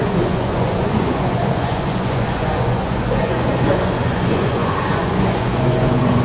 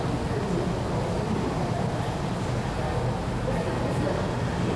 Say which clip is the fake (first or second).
first